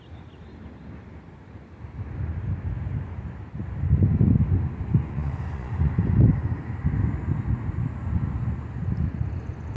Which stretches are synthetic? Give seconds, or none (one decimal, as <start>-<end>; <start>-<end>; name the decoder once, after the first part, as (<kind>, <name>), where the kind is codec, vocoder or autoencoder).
4.9-5.9 (vocoder, Vocos)